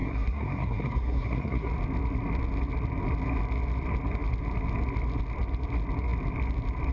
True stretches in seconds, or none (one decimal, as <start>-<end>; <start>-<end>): 1.7-6.9